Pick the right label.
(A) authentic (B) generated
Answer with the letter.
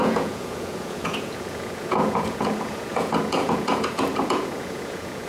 B